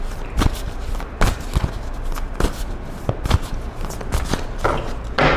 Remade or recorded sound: recorded